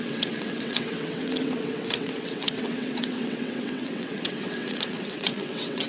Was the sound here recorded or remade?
remade